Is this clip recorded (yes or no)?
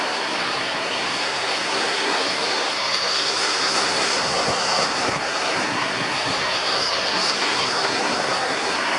no